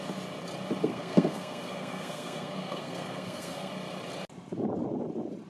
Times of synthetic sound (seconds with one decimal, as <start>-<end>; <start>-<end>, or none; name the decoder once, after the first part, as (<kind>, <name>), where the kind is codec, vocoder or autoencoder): 0.8-3.7 (codec, SNAC)